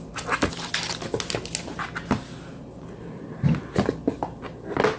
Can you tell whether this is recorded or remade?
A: recorded